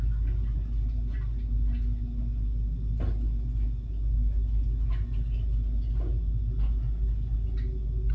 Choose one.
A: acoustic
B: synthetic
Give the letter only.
A